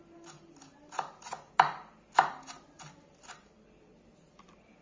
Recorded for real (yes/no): yes